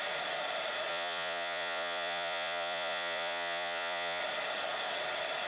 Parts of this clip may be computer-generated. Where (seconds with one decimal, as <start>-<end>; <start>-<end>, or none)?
0.9-4.2